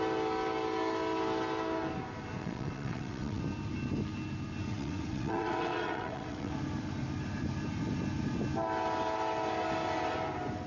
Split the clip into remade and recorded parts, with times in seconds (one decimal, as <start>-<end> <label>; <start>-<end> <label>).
0.0-2.4 recorded; 2.4-3.4 remade; 3.4-4.7 recorded; 4.7-6.5 remade; 6.5-10.7 recorded